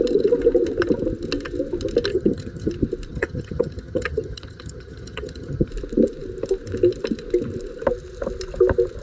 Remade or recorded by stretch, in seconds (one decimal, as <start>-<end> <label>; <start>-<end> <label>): 0.0-2.1 recorded; 2.1-2.7 remade; 2.7-3.1 recorded; 3.1-5.7 remade; 5.7-9.0 recorded